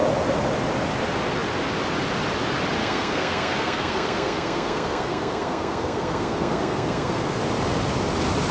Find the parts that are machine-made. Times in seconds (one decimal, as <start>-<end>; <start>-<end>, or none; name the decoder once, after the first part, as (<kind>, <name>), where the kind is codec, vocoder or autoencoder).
2.8-7.4 (codec, SNAC)